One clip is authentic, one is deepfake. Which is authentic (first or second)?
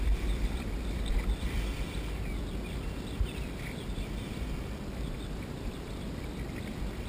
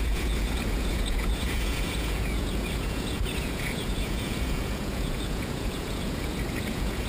first